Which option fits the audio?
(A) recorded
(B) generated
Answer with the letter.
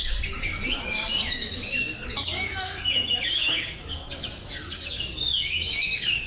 B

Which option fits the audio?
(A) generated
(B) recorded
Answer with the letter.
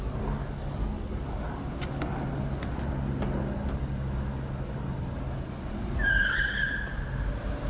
B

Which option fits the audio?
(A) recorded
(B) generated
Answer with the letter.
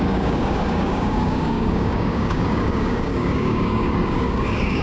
B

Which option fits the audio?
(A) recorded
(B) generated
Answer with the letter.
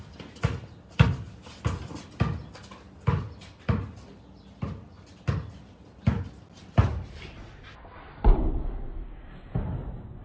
A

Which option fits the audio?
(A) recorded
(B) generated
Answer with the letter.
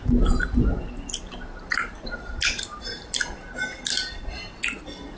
A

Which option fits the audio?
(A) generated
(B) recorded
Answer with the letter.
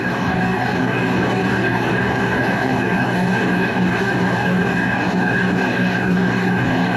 A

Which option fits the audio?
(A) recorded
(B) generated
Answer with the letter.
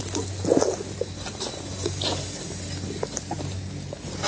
A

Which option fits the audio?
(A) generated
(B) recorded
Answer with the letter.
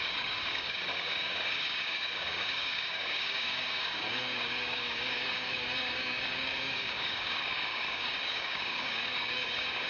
A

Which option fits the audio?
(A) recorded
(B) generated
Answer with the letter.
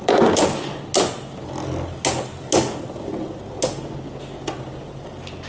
A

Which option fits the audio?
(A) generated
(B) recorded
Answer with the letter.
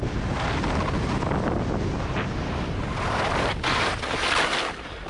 B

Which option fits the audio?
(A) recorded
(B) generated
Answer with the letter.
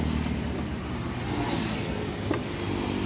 A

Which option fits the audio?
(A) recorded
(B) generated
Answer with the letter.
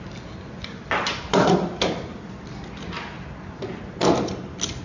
A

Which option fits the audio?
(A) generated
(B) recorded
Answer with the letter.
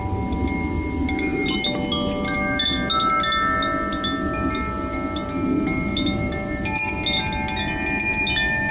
B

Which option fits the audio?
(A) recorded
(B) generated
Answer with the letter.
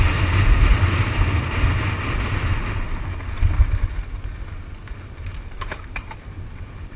A